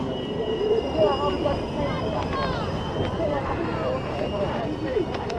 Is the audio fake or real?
fake